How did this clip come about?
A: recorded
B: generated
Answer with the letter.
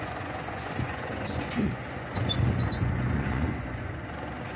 B